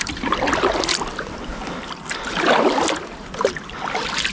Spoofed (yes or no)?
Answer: no